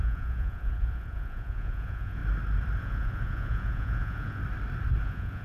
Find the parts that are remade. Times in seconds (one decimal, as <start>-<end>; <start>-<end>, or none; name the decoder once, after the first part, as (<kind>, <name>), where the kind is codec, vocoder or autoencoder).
0.0-2.2 (vocoder, Vocos); 2.8-4.4; 5.0-5.4